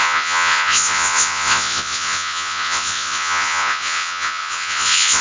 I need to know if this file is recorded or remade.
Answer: remade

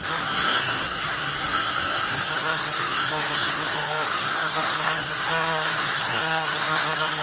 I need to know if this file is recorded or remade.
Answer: remade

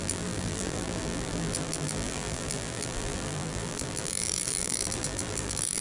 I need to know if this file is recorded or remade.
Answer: remade